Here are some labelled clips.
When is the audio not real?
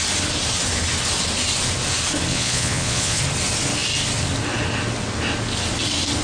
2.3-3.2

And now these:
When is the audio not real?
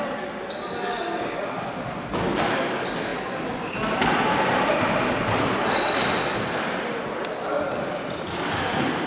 none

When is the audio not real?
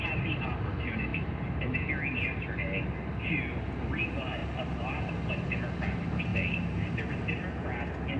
none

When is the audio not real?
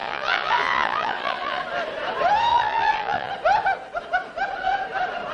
0.0-1.6; 2.5-3.3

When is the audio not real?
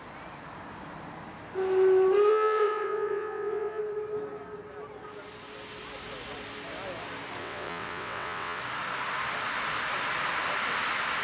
2.3-3.8; 7.4-8.6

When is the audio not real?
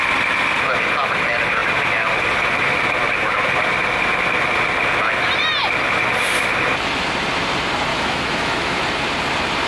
7.9-8.8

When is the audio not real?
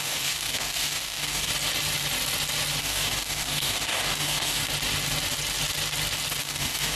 0.0-1.5; 2.8-4.6; 6.4-7.0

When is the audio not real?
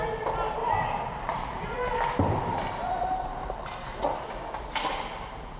none